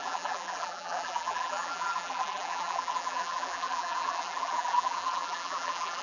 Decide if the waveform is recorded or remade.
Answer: remade